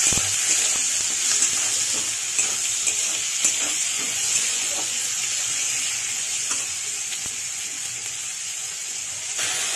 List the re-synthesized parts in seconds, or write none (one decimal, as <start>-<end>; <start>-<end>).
3.6-9.8